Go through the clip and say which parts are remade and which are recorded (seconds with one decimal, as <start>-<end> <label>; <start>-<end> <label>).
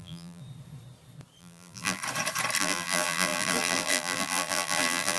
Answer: 0.0-0.4 remade; 0.4-1.4 recorded; 1.4-2.0 remade; 2.0-2.6 recorded; 2.6-5.2 remade